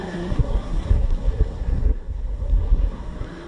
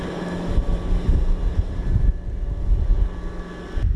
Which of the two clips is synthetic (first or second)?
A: first